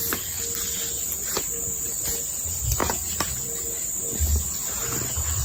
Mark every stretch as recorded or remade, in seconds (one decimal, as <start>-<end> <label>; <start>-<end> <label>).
0.0-5.4 recorded